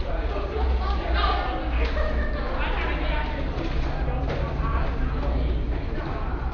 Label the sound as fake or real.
real